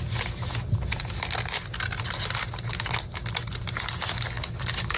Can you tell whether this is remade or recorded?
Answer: recorded